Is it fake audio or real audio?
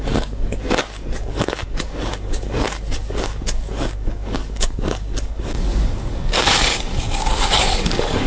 fake